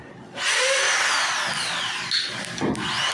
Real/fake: real